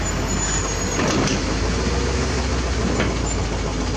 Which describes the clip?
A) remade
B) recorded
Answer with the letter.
B